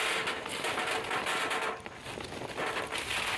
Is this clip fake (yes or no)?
no